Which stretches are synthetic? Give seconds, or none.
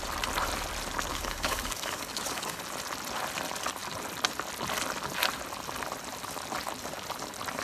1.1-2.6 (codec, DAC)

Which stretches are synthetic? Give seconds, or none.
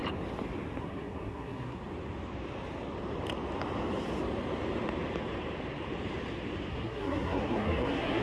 0.8-1.8 (codec, SNAC); 6.7-8.2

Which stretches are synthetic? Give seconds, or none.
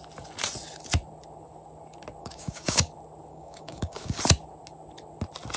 2.2-2.9 (codec, DAC); 3.3-4.2